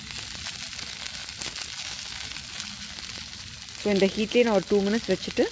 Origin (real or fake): real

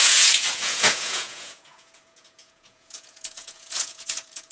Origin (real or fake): fake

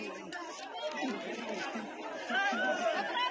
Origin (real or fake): real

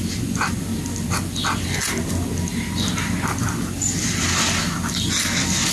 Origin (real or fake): real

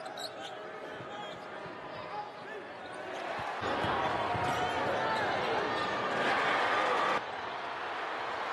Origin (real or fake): real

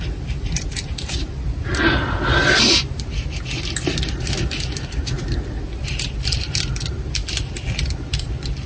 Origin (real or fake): real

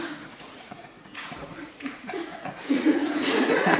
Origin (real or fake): fake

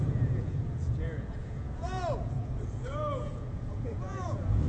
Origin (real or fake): fake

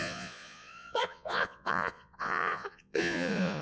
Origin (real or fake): fake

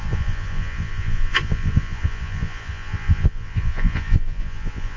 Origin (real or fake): fake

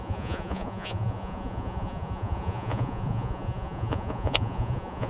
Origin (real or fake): fake